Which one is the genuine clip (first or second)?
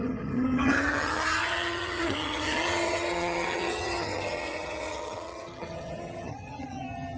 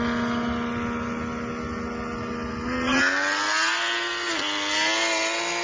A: second